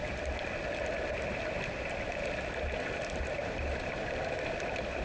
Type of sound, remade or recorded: recorded